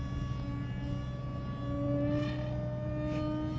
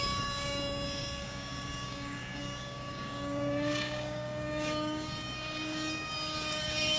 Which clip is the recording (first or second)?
first